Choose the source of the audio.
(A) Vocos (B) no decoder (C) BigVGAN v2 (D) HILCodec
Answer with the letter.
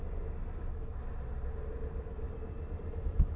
B